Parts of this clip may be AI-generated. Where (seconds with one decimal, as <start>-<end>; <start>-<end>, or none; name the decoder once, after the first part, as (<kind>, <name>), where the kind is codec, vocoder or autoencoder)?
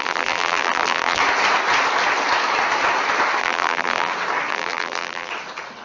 0.0-1.2 (vocoder, BigVGAN v2); 3.4-4.1; 4.5-5.3